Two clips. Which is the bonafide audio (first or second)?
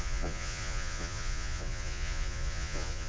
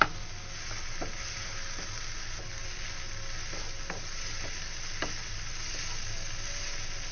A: second